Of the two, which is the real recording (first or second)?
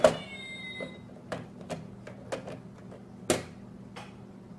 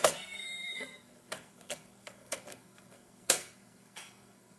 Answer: first